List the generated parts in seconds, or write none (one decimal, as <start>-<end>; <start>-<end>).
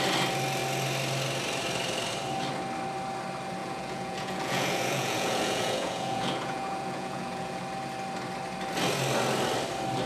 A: 3.6-7.6